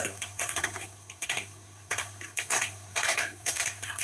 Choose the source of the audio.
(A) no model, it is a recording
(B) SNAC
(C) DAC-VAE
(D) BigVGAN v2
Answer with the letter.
B